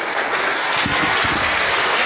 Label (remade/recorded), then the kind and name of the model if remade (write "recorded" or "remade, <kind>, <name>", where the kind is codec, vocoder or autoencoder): remade, codec, SNAC